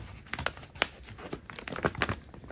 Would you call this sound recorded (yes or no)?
yes